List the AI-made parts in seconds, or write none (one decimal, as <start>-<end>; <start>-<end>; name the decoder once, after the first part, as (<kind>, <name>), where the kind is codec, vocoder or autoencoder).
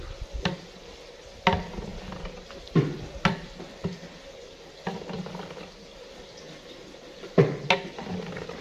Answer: none